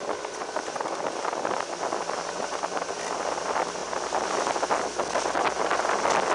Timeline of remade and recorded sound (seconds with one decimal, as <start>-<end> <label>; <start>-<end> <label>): 0.0-6.3 recorded